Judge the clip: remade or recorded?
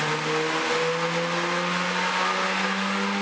recorded